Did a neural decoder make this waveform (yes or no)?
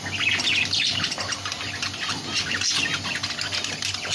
no